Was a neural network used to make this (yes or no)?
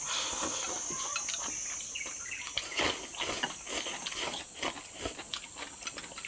no